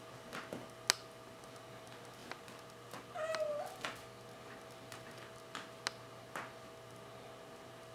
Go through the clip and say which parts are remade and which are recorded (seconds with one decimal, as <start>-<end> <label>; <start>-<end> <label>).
0.0-7.9 recorded